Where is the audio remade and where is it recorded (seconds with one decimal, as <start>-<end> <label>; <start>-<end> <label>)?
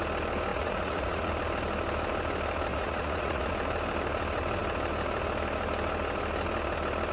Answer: 0.0-0.5 recorded; 0.5-1.3 remade; 1.3-2.7 recorded; 2.7-3.5 remade; 3.5-7.1 recorded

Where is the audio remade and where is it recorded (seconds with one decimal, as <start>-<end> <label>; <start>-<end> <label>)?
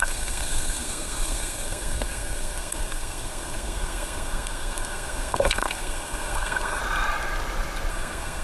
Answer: 0.0-6.8 remade; 6.8-7.9 recorded; 7.9-8.4 remade